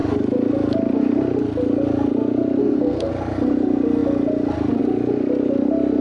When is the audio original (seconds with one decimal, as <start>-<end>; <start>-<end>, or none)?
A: 0.0-2.6; 3.1-6.0